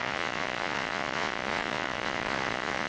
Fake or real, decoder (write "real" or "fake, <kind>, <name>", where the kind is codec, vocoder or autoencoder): fake, vocoder, Vocos